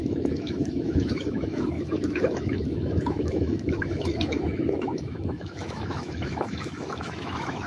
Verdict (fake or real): fake